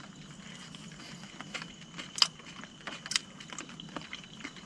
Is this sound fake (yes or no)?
no